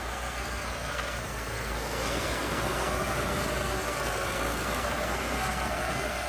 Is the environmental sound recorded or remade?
remade